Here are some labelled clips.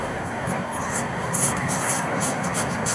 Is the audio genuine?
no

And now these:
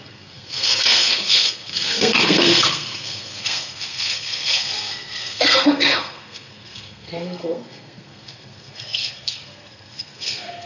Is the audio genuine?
no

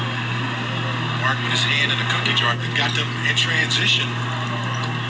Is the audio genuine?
yes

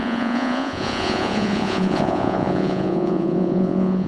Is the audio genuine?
no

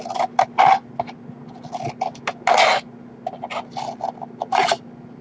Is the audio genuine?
yes